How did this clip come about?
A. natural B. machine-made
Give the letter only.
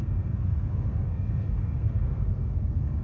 B